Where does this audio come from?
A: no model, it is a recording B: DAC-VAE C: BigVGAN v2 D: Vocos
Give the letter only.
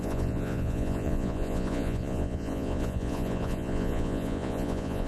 D